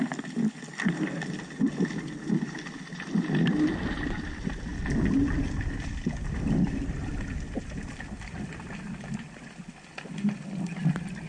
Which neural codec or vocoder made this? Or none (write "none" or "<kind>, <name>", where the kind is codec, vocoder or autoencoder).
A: none